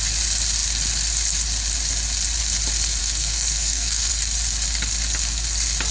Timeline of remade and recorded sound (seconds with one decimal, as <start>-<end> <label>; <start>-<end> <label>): 0.0-3.0 recorded; 3.0-4.1 remade; 4.1-5.9 recorded